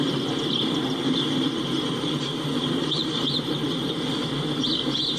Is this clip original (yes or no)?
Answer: no